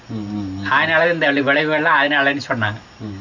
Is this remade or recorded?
recorded